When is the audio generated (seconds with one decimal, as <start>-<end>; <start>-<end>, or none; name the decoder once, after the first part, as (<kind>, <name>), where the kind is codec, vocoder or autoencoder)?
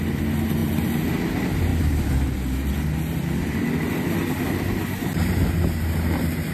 none